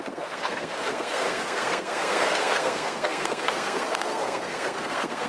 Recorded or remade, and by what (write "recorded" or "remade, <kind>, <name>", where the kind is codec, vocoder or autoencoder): remade, codec, SNAC